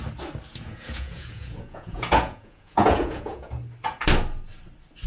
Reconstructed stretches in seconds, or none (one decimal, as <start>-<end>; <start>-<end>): 0.5-3.6

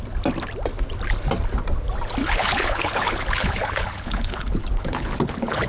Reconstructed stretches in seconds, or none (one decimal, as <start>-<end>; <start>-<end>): 2.2-5.7

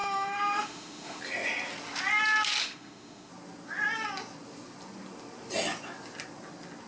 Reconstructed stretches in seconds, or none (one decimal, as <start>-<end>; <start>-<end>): 0.0-1.2; 2.6-3.3

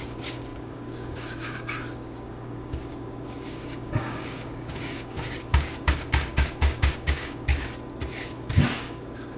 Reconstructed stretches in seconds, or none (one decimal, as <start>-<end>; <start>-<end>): 0.0-7.5; 8.3-9.4

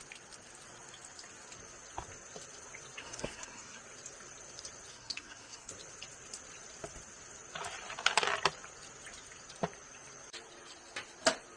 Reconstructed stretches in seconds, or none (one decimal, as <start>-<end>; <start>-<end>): 3.0-3.8; 4.9-5.7

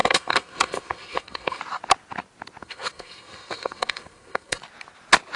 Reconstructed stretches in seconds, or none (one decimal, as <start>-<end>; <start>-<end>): 0.0-1.6; 2.6-4.6

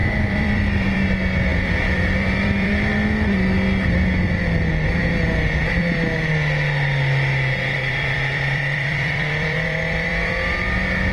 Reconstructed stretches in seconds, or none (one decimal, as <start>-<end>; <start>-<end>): 0.0-1.0; 1.5-2.7; 7.9-10.3